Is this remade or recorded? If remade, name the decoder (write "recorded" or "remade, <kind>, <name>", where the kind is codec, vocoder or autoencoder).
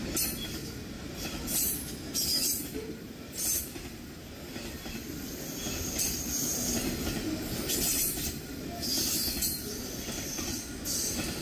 recorded